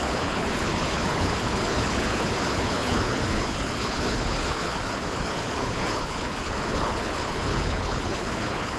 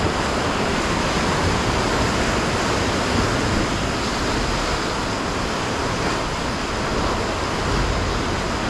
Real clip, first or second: second